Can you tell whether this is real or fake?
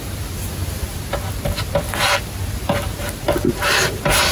real